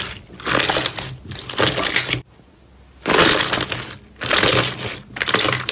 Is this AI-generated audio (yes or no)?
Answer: no